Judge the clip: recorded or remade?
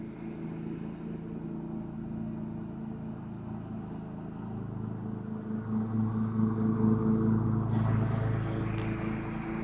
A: recorded